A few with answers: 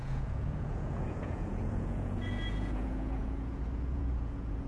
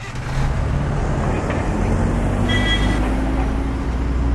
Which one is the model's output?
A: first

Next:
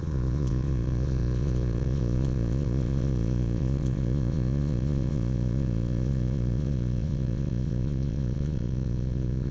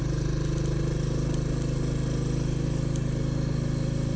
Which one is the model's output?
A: first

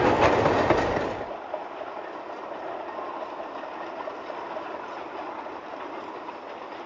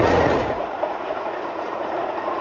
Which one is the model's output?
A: second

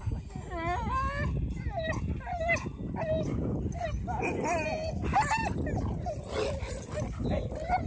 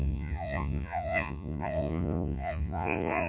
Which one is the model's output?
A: second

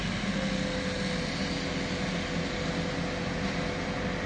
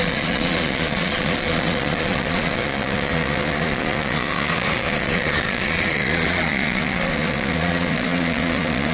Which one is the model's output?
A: second